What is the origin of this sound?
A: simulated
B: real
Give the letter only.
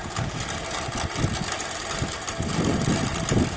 B